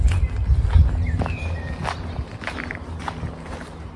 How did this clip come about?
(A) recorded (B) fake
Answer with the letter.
A